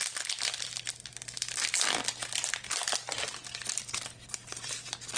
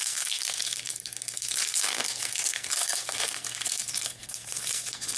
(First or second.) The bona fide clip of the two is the first